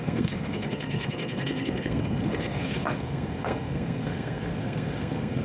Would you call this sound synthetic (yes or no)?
yes